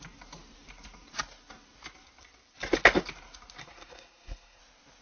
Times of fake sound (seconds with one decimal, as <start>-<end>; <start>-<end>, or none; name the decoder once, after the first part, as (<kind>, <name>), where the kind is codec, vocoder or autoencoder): 3.6-4.6 (codec, SNAC)